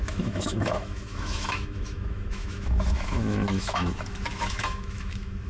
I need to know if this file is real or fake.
fake